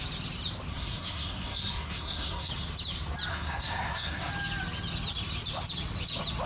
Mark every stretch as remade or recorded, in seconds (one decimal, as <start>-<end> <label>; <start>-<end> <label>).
0.0-0.7 recorded; 0.7-2.5 remade; 2.5-3.3 recorded; 3.3-4.3 remade; 4.3-6.5 recorded